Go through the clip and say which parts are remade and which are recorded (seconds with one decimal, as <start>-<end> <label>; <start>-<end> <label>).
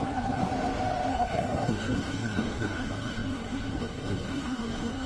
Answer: 0.0-0.4 remade; 0.4-1.1 recorded; 1.1-5.1 remade